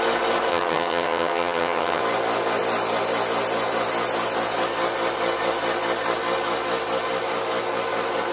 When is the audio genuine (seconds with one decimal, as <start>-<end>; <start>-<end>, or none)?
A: 0.0-0.5; 2.0-8.3